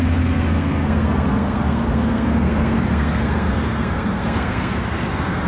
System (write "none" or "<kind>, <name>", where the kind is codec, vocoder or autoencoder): codec, SNAC